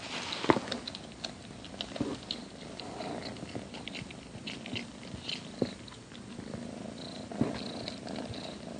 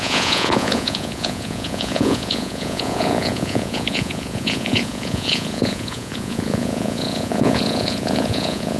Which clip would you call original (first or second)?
first